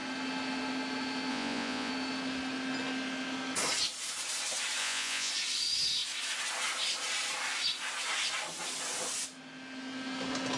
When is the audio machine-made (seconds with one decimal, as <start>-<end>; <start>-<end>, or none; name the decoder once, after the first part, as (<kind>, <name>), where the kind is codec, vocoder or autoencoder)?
1.3-1.9 (vocoder, Vocos); 4.8-5.3